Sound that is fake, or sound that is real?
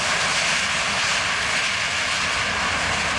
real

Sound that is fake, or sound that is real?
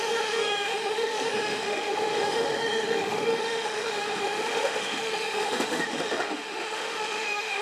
fake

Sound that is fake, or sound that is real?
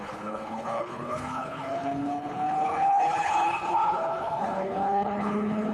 fake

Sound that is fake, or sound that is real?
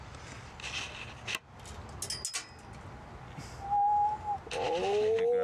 real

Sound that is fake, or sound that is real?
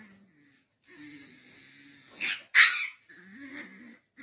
real